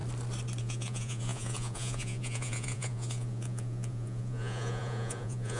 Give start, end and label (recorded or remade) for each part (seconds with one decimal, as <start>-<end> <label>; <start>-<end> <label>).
0.0-0.6 recorded; 0.6-5.6 remade